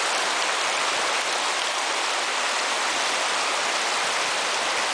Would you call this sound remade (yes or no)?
no